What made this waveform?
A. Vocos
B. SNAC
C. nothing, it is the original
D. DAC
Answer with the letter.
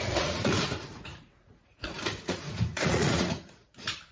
A